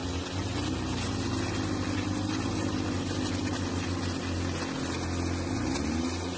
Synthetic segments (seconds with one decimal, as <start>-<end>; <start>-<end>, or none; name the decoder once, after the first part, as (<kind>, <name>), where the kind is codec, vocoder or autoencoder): none